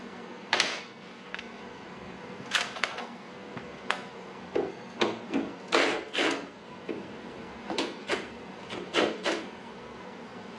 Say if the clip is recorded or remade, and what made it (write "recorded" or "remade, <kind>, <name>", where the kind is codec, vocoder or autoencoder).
remade, codec, SNAC